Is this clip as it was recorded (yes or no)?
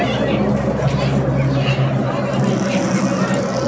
yes